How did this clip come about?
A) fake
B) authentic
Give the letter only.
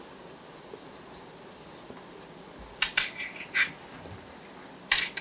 B